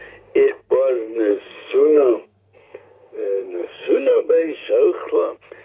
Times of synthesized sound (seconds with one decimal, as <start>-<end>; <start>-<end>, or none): 1.3-4.7